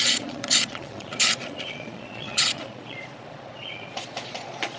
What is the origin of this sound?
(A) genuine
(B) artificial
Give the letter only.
B